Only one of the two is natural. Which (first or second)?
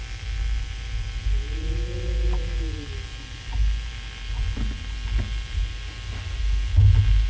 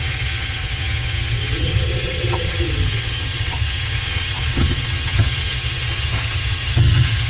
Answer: first